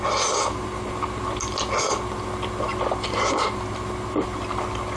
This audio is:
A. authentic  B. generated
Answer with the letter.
A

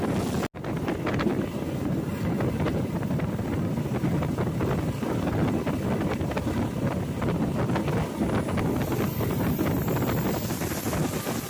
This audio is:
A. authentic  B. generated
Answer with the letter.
A